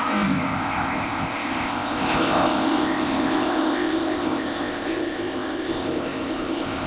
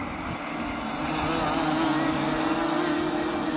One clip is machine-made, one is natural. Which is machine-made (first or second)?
first